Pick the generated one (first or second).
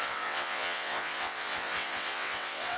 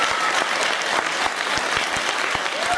first